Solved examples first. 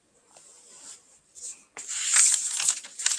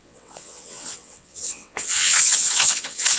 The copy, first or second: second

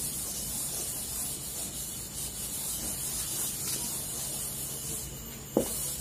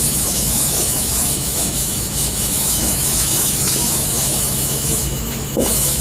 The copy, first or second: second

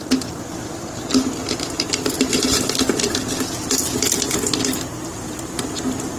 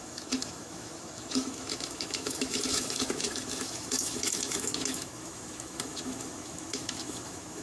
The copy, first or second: second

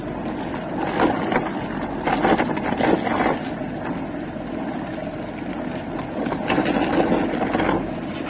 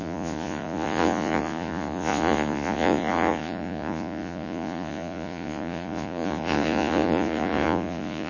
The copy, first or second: second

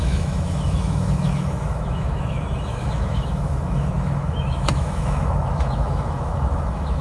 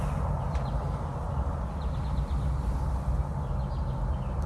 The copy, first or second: first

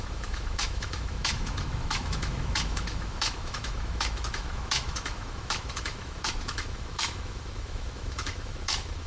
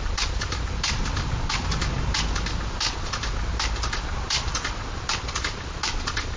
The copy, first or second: first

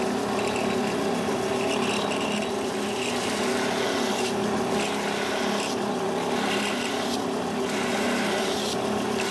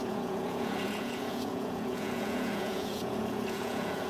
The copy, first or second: second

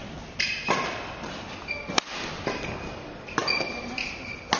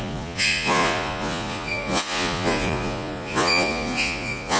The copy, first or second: second